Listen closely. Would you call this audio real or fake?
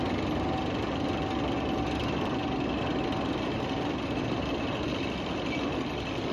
real